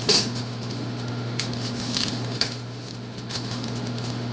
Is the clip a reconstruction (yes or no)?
yes